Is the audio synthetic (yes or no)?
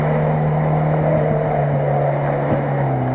no